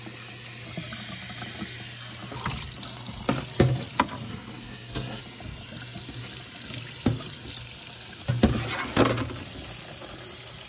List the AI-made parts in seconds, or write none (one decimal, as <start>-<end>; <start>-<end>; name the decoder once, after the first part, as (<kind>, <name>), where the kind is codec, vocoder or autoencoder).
4.3-5.2 (codec, SNAC)